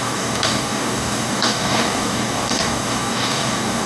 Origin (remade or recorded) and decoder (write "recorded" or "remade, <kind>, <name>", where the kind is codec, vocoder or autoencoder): remade, codec, DAC